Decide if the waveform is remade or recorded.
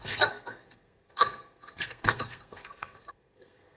remade